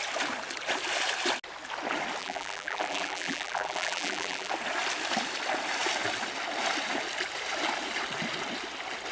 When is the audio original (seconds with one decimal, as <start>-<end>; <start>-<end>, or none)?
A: 0.0-2.2; 4.5-9.1